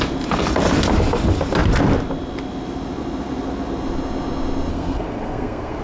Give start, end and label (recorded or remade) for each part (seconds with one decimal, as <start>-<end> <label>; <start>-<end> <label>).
0.0-4.7 recorded; 4.7-5.8 remade